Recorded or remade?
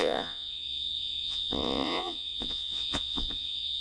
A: remade